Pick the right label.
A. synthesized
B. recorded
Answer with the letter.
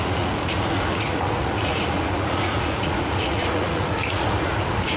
A